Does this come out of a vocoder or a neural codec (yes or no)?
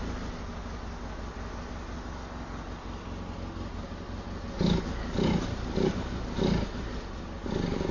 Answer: no